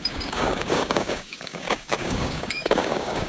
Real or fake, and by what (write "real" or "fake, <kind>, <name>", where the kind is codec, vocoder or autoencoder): fake, codec, DAC